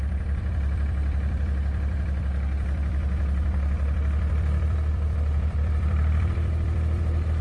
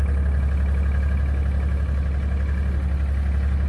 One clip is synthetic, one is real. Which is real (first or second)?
second